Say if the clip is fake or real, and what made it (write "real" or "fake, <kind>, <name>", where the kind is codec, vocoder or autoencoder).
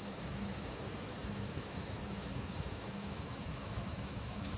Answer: fake, autoencoder, DAC-VAE